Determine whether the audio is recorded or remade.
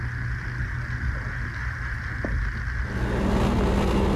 recorded